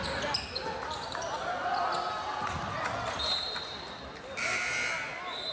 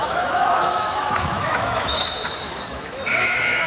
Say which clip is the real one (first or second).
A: first